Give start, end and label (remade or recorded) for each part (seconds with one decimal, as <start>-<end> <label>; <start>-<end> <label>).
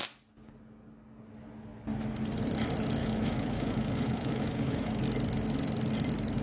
0.0-3.0 recorded; 3.0-5.0 remade; 5.0-6.4 recorded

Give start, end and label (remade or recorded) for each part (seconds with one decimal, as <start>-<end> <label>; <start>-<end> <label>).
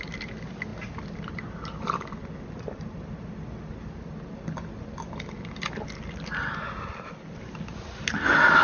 0.0-8.6 recorded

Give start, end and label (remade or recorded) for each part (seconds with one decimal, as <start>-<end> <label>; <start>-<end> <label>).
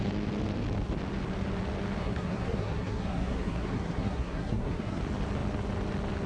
0.0-2.0 recorded; 2.0-5.0 remade; 5.0-6.3 recorded